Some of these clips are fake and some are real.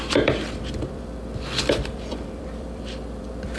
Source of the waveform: fake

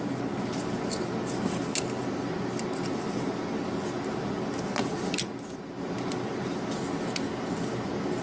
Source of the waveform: real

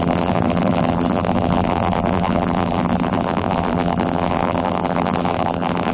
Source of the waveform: fake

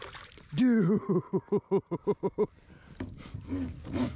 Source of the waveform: real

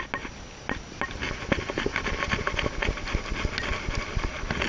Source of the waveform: real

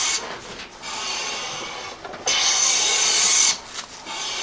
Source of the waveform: real